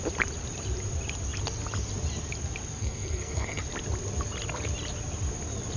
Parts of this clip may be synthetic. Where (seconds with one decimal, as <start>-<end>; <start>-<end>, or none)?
2.8-3.6